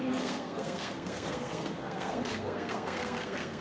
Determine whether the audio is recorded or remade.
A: remade